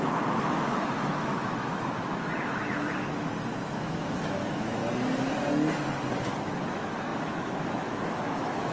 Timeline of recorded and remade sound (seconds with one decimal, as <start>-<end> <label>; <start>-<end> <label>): 0.0-4.8 remade; 4.8-6.6 recorded; 6.6-8.7 remade